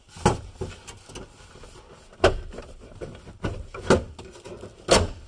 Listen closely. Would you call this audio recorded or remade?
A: recorded